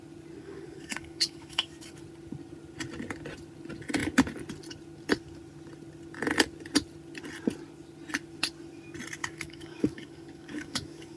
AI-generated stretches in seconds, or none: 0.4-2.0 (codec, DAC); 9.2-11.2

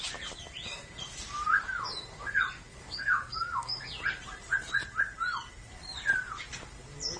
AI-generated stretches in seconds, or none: 2.7-3.8 (codec, DAC)

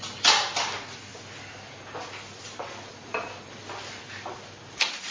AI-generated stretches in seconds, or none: none

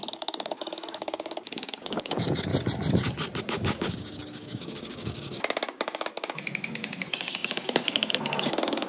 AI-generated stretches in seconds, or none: 0.0-2.5 (codec, DAC); 3.4-8.9

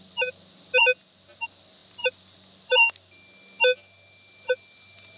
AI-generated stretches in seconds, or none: none